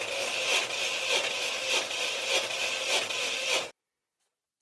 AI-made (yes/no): no